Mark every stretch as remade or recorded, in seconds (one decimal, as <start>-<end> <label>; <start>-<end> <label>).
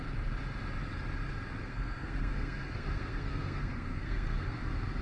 0.0-1.6 recorded; 1.6-4.6 remade; 4.6-5.0 recorded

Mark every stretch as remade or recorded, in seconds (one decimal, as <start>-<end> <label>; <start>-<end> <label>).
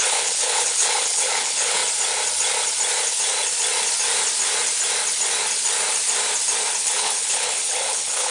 0.0-1.8 remade; 1.8-6.8 recorded; 6.8-8.3 remade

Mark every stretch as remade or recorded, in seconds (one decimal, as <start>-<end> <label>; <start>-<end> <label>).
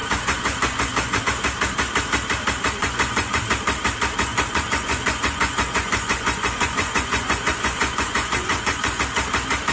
0.0-1.2 remade; 1.2-2.8 recorded; 2.8-3.4 remade; 3.4-4.3 recorded; 4.3-9.0 remade; 9.0-9.7 recorded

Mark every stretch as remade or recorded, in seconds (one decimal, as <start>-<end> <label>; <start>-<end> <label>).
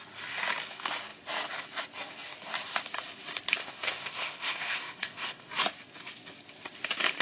0.0-3.6 recorded; 3.6-5.5 remade; 5.5-7.2 recorded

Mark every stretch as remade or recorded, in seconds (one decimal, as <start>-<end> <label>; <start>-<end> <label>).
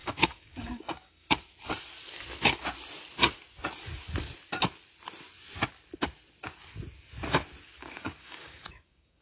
0.0-1.3 remade; 1.3-7.8 recorded; 7.8-9.2 remade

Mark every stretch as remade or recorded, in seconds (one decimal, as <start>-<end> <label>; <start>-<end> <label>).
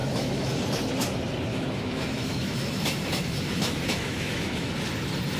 0.0-0.6 remade; 0.6-1.5 recorded; 1.5-4.7 remade; 4.7-5.4 recorded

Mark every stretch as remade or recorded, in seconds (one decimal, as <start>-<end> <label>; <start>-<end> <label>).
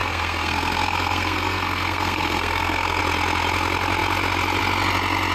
0.0-3.0 remade; 3.0-5.3 recorded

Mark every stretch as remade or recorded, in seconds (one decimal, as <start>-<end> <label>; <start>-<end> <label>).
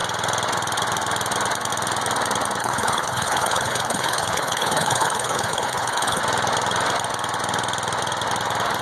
0.0-2.6 recorded; 2.6-6.2 remade; 6.2-8.8 recorded